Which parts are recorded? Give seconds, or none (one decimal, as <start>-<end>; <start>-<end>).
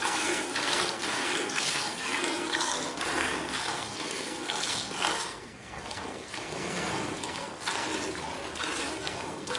7.9-8.8